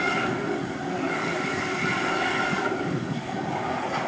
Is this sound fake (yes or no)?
yes